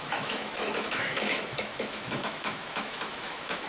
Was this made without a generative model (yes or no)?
no